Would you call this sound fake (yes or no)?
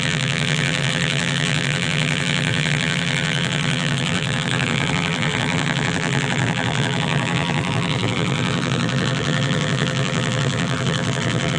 yes